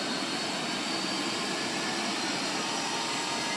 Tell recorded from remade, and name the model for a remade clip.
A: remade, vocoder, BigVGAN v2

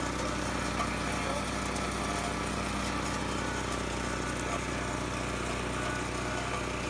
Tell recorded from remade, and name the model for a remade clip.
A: recorded